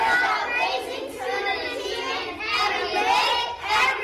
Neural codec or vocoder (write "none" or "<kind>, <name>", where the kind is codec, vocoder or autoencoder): none